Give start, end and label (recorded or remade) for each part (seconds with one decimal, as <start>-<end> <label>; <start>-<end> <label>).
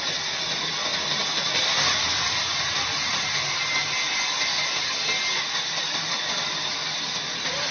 0.0-7.7 recorded